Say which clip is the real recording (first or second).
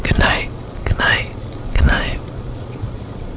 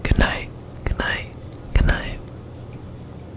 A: second